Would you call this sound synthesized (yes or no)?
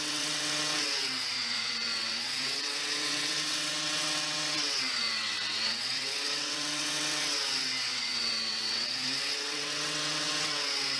yes